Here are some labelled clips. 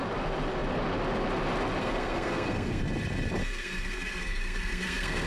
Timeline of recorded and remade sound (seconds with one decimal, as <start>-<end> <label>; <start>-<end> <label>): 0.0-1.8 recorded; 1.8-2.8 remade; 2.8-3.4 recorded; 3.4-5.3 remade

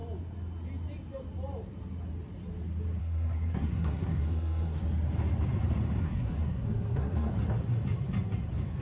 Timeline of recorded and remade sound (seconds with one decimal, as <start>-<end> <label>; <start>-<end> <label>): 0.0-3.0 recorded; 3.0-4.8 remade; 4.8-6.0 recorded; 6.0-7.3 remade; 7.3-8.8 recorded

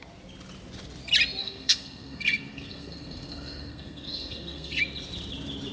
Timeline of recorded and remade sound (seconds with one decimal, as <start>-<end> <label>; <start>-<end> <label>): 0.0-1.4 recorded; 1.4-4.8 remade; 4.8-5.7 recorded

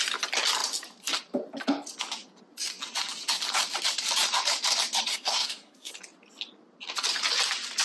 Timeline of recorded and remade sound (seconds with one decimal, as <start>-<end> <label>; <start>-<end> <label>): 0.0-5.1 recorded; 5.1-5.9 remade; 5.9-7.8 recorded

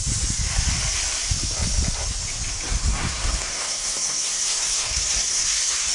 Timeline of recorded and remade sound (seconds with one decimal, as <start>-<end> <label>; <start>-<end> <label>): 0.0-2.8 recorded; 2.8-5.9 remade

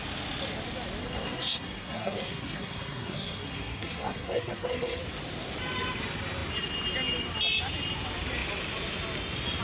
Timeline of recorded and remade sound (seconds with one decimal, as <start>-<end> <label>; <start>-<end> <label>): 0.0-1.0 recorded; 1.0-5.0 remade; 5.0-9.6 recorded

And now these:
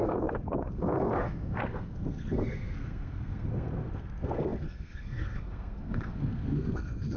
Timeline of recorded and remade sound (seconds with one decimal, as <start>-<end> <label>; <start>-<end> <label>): 0.0-7.2 remade